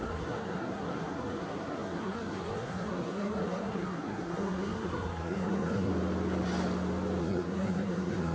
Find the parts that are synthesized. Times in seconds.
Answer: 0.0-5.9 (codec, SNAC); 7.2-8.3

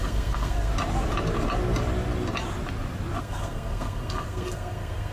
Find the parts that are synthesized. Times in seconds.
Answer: 0.0-0.7 (codec, SNAC); 3.2-5.1

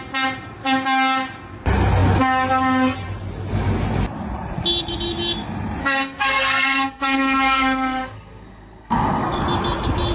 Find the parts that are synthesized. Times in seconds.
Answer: 5.8-9.4 (codec, SNAC)

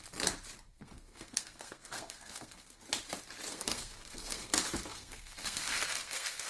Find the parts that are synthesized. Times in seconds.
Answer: 0.7-2.8 (codec, SNAC); 3.5-4.5; 4.9-6.5

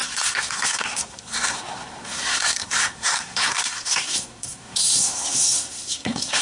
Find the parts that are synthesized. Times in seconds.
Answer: 0.0-6.4 (codec, SNAC)

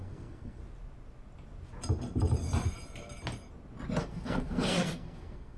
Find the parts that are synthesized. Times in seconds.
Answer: 0.0-0.6 (codec, SNAC); 4.0-5.6

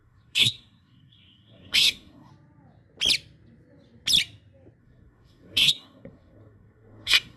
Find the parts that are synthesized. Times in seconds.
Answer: 0.0-2.3 (codec, SNAC); 4.8-7.4

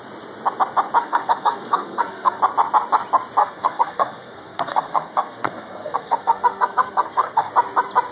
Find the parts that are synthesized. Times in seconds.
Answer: 1.0-2.4 (codec, SNAC); 3.4-7.5